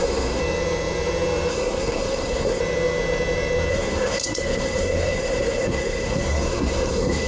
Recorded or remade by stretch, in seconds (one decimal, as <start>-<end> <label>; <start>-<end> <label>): 0.0-0.4 remade; 0.4-1.5 recorded; 1.5-2.6 remade; 2.6-3.7 recorded; 3.7-7.3 remade